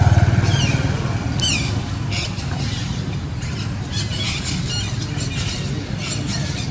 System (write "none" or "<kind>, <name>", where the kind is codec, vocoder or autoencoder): none